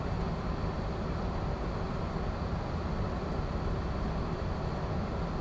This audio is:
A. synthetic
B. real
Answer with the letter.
B